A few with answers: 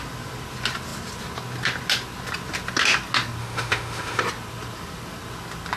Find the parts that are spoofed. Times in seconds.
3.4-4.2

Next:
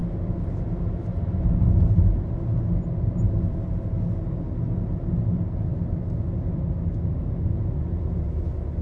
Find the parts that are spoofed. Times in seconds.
none